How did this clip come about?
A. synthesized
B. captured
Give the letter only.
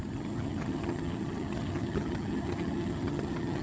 A